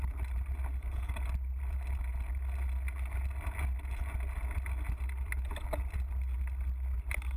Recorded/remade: recorded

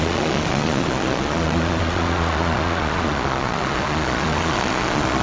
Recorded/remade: remade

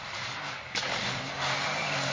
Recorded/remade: recorded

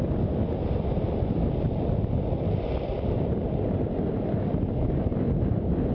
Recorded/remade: recorded